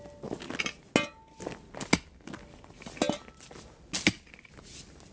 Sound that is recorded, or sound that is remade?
recorded